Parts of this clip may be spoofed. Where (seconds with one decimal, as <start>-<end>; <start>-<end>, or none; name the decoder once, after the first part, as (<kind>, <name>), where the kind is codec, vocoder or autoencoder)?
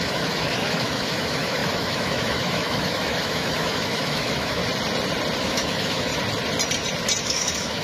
0.0-4.6 (autoencoder, DAC-VAE); 5.4-6.1; 7.2-7.8